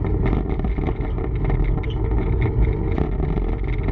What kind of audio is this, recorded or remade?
recorded